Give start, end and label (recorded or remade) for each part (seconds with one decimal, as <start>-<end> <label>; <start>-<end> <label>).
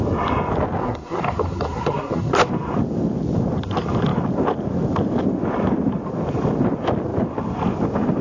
0.0-0.8 recorded; 0.8-2.3 remade; 2.3-8.2 recorded